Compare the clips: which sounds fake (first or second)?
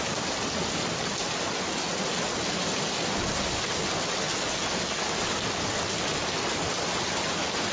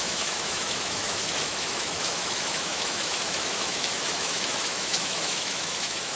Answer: second